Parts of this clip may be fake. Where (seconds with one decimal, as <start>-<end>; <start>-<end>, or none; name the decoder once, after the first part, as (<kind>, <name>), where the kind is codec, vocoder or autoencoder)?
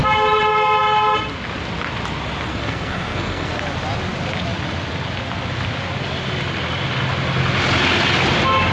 2.5-3.6 (codec, SNAC)